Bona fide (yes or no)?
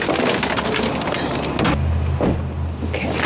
yes